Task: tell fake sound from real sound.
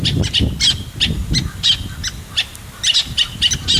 real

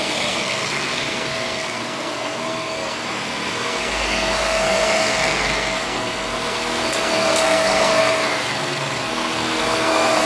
fake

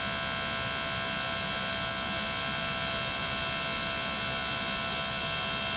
real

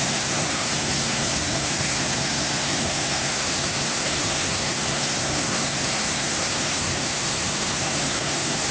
fake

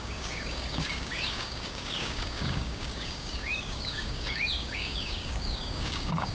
fake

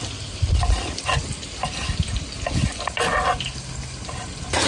real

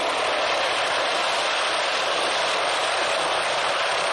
fake